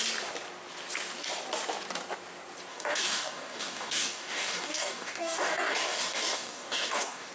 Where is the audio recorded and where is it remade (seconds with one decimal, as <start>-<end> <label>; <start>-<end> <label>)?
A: 0.0-2.7 recorded; 2.7-7.3 remade